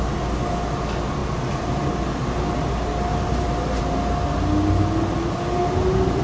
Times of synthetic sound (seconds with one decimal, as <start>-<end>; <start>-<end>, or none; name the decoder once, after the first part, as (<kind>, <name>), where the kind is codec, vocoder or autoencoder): 1.2-1.8 (vocoder, BigVGAN v2); 3.1-3.8